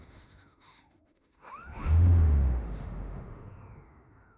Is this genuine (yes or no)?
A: no